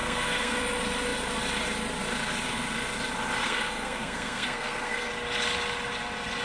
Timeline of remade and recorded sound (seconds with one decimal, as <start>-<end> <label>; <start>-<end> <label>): 0.0-0.6 remade; 0.6-3.4 recorded; 3.4-5.1 remade; 5.1-6.4 recorded